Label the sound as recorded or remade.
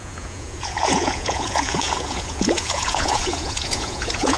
remade